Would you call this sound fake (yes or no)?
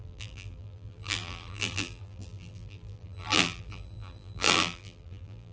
yes